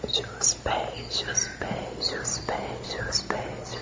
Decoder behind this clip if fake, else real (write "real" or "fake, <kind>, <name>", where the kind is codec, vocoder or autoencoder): real